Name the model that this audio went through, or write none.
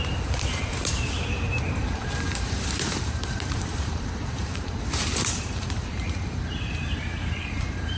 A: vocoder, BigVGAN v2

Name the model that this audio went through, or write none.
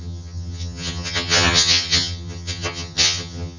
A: vocoder, HiFi-GAN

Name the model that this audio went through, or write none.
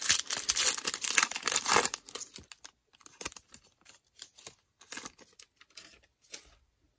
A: none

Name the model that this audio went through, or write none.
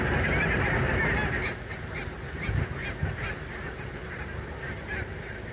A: none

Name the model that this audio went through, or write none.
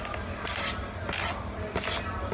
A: none